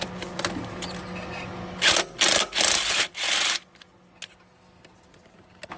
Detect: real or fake real